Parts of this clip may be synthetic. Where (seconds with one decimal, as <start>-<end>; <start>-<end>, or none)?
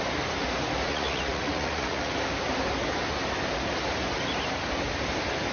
0.9-2.1